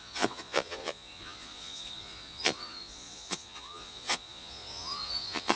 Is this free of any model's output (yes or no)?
no